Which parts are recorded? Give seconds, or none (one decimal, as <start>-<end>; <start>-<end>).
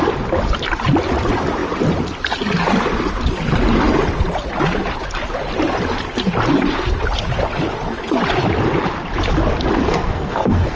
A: 0.0-9.9